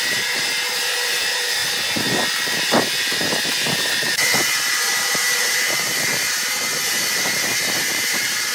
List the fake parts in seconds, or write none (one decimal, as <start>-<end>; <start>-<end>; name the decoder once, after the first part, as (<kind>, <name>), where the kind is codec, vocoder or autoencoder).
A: 0.0-1.6 (vocoder, BigVGAN v2); 4.1-8.5